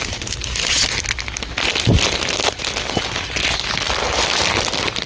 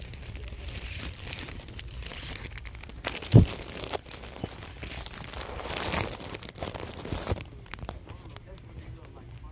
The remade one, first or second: second